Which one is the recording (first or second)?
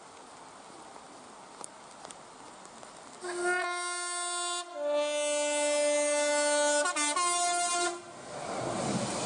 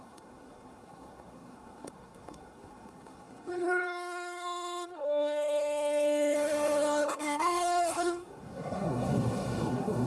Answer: first